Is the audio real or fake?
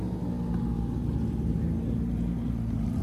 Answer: real